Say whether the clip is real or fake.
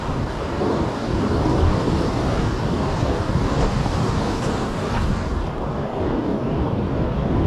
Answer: fake